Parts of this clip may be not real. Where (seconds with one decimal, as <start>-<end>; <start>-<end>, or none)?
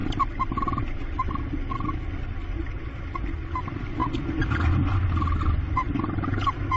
0.0-1.3